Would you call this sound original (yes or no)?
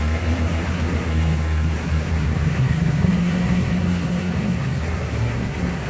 no